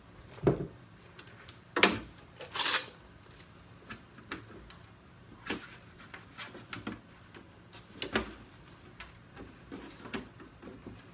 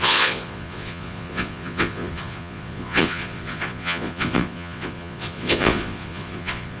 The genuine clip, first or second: first